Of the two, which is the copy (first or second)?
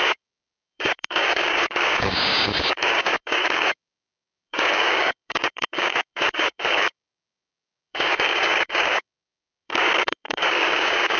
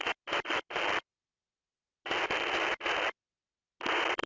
first